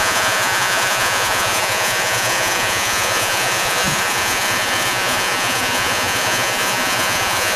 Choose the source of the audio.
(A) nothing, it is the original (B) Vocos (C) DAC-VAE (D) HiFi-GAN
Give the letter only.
B